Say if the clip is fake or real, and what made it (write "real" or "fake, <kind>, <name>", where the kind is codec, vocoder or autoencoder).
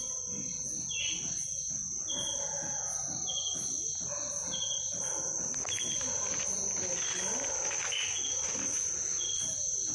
real